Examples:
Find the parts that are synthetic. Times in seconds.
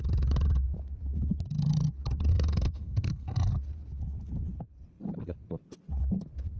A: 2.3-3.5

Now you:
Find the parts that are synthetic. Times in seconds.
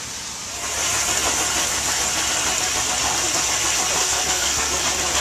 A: 4.0-4.8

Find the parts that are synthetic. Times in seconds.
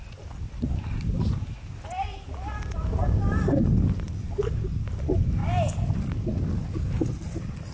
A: none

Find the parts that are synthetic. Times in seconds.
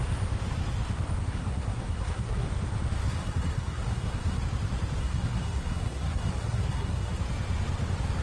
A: 1.3-2.5; 3.0-4.4; 5.0-7.2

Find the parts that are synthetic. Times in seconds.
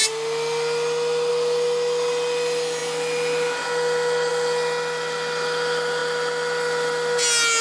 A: none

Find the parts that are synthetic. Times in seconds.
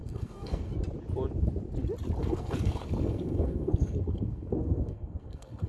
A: 0.0-0.7; 2.2-5.7